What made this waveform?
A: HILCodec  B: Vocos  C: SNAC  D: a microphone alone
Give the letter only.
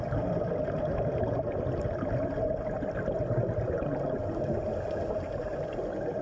D